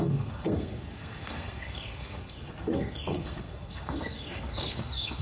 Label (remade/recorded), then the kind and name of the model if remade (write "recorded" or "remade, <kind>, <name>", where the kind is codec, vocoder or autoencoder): remade, codec, SNAC